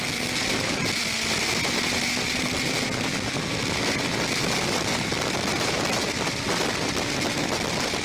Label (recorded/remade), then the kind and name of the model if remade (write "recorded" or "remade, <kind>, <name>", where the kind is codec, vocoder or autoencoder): recorded